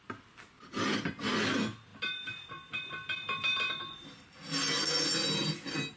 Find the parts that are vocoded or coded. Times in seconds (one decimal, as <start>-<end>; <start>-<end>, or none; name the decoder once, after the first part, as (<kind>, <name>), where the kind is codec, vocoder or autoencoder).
none